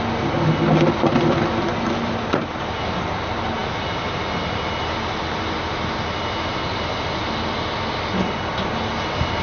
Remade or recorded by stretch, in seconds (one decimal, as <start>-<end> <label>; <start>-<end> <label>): 0.0-9.4 recorded